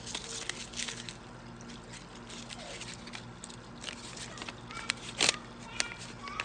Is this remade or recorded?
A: recorded